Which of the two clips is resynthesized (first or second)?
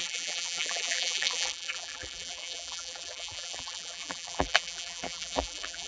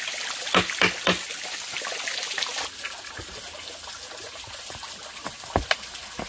first